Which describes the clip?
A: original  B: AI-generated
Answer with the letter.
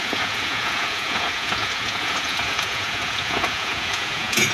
B